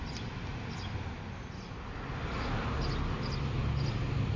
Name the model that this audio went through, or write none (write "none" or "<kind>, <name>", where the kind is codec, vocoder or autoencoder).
none